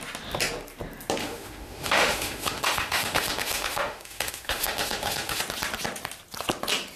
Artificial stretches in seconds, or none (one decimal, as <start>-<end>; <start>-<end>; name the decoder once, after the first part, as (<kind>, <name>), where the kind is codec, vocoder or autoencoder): 1.2-5.4 (autoencoder, DAC-VAE)